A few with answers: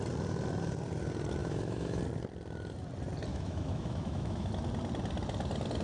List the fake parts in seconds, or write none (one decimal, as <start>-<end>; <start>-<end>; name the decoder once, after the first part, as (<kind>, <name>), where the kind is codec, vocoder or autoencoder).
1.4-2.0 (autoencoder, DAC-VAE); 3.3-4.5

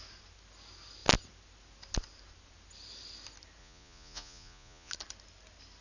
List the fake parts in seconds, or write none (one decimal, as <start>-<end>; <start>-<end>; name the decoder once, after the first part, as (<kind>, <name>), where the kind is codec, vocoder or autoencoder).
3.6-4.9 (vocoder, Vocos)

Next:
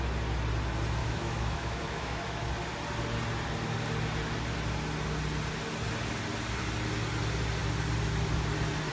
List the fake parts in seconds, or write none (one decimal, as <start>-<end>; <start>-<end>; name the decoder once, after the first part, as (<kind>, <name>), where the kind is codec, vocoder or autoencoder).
1.0-2.5 (autoencoder, DAC-VAE)